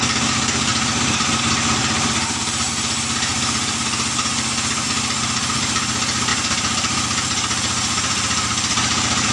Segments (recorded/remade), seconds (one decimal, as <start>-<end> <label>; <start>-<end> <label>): 0.0-0.7 recorded; 0.7-1.4 remade; 1.4-1.8 recorded; 1.8-2.7 remade; 2.7-3.3 recorded; 3.3-3.8 remade; 3.8-6.3 recorded; 6.3-9.3 remade